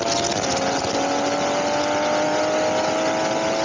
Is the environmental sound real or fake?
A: real